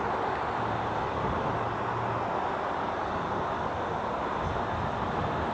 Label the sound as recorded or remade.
recorded